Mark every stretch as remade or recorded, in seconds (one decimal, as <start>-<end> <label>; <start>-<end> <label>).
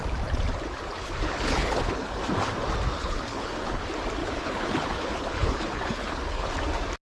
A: 0.0-1.0 recorded; 1.0-2.2 remade; 2.2-3.0 recorded; 3.0-3.8 remade; 3.8-4.2 recorded; 4.2-6.5 remade; 6.5-7.1 recorded